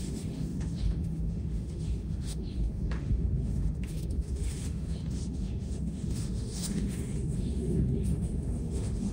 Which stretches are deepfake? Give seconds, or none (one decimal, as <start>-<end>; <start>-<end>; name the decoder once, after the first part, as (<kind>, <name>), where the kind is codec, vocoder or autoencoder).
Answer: 0.0-9.1 (autoencoder, DAC-VAE)